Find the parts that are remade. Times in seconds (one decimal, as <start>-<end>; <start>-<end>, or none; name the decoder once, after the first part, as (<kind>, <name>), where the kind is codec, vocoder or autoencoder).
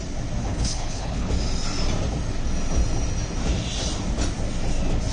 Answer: 0.4-1.3 (codec, HILCodec)